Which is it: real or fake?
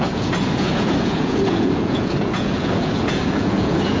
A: fake